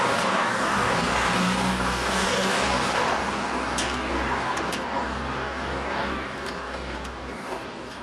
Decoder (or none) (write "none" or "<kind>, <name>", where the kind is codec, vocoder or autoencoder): codec, DAC